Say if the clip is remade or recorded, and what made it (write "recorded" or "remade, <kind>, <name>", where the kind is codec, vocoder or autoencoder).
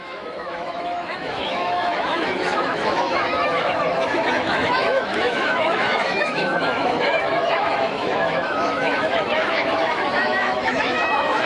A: remade, autoencoder, DAC-VAE